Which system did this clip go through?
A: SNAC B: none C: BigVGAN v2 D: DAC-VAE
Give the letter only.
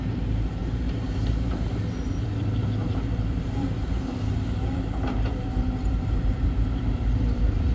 C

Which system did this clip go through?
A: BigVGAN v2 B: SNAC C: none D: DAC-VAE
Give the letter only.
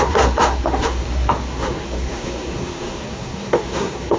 B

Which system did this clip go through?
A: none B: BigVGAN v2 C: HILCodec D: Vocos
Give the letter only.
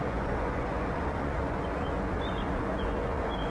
D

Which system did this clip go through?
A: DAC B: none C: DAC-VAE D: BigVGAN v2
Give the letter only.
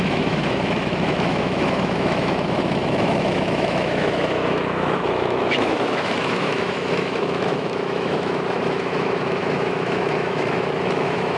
C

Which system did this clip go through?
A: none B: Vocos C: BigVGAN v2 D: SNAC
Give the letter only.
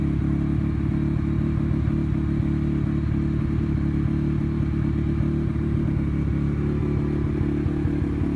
A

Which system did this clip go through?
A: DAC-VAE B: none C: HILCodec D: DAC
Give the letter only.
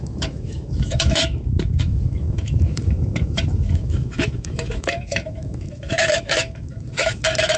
A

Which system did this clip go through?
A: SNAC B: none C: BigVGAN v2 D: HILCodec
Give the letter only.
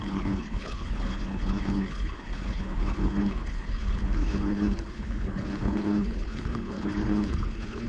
D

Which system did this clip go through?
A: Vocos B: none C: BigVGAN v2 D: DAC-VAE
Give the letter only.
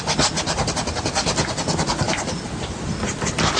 B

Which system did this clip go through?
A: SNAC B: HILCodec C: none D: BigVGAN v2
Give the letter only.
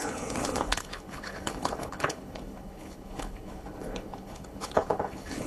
B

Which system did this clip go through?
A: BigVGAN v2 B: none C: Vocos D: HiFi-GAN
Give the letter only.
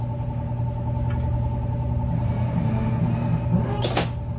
B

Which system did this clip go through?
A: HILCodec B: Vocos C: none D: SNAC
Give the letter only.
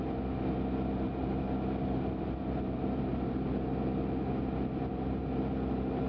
C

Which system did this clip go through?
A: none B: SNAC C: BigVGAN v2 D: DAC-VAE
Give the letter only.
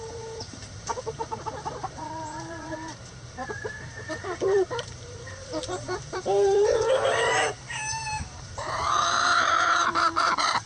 C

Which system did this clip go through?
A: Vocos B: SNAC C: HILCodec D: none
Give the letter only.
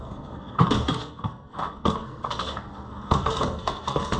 B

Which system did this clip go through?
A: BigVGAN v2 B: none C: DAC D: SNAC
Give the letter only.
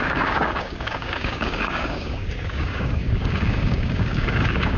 C